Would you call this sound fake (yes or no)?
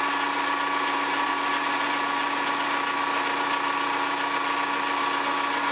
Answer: no